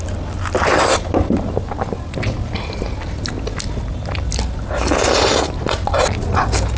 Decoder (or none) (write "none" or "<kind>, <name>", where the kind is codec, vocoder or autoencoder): none